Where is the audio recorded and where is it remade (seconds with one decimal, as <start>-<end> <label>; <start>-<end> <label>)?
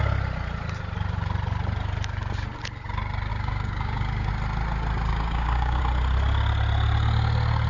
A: 0.0-3.3 recorded; 3.3-4.3 remade; 4.3-5.1 recorded; 5.1-5.8 remade; 5.8-7.7 recorded